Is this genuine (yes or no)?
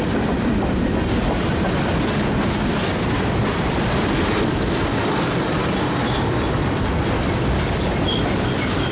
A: yes